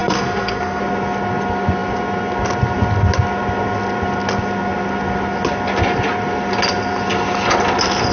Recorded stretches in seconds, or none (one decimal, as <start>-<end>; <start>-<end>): 0.8-8.1